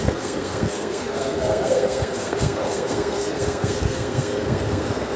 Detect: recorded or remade remade